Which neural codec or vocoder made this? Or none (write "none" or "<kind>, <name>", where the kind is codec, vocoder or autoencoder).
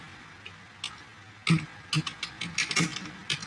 none